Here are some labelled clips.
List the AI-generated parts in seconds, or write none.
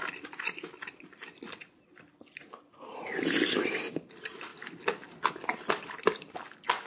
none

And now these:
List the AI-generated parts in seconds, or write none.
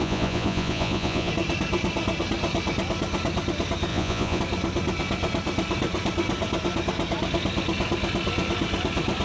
0.0-1.3 (vocoder, Vocos); 3.9-4.4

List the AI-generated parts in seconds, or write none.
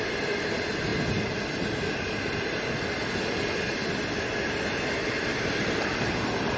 none